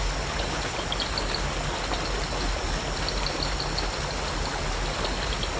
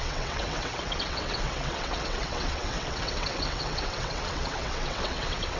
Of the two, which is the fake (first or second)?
second